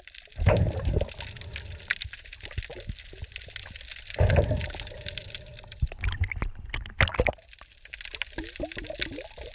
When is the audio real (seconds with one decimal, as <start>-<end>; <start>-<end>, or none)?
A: 0.0-9.5